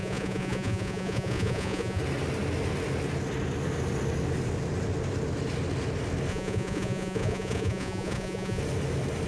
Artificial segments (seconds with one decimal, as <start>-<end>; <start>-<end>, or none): 0.0-2.0; 6.3-8.6